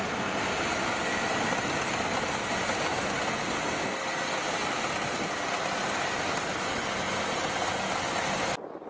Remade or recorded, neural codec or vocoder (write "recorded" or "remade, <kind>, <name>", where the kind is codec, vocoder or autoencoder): recorded